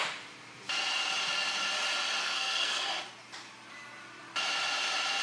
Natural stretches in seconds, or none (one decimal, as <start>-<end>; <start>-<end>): 0.0-2.2; 3.0-5.2